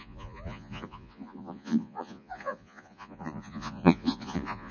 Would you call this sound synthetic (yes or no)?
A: yes